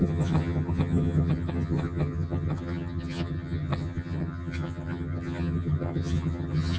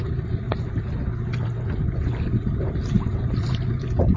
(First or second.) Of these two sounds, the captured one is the second